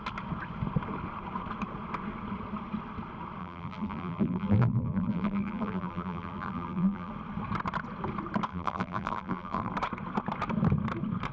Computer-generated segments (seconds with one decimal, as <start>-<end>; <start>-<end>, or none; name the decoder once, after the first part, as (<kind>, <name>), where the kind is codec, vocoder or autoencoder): 3.4-7.1 (vocoder, BigVGAN v2); 8.5-9.7